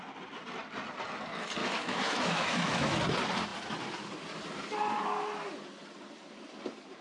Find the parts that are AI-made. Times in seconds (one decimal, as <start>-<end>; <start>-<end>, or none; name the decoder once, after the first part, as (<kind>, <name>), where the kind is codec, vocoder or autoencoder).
1.6-3.0 (autoencoder, DAC-VAE)